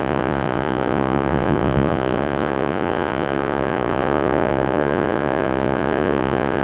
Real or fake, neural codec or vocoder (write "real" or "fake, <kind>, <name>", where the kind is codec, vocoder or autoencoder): fake, vocoder, Vocos